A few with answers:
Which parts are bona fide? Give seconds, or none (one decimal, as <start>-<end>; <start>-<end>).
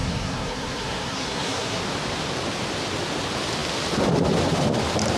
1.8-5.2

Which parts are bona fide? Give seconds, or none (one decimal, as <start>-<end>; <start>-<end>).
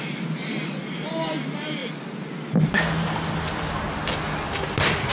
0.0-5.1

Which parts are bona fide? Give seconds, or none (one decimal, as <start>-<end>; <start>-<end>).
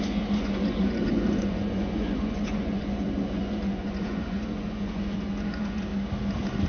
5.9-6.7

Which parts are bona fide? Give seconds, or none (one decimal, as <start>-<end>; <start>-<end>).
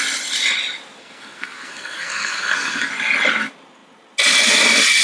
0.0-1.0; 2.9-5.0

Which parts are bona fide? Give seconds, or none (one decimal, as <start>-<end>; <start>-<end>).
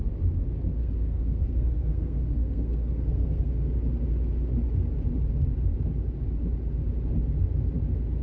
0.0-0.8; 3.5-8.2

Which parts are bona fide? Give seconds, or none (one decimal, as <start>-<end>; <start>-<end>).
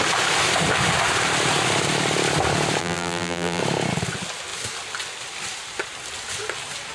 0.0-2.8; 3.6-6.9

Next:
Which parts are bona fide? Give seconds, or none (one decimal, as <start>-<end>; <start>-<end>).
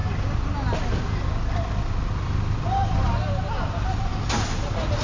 0.0-5.0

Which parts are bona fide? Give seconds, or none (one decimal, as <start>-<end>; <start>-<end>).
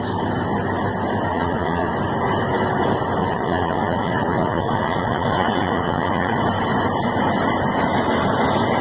0.0-1.3; 1.9-3.2; 6.4-8.8